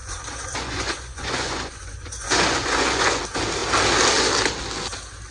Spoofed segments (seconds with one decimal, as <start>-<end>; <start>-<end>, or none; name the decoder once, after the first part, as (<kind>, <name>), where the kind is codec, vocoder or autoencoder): 0.0-3.2 (vocoder, Vocos)